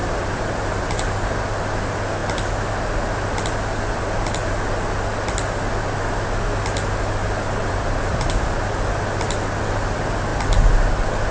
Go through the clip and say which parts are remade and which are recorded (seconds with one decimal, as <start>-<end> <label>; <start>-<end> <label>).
0.0-1.3 remade; 1.3-7.6 recorded; 7.6-8.6 remade; 8.6-11.3 recorded